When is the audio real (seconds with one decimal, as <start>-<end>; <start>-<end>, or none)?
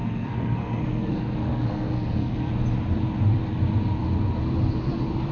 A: 2.5-5.3